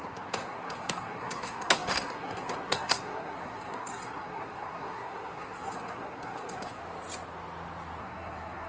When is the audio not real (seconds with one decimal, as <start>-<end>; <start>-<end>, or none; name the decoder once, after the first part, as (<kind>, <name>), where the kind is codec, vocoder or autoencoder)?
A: 0.0-6.8 (codec, SNAC); 8.0-8.7